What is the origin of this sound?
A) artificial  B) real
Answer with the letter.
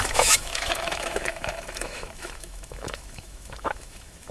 A